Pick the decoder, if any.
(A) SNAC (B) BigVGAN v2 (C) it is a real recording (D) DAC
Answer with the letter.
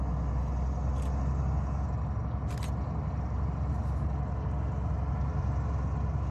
C